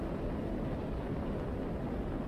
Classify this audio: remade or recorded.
recorded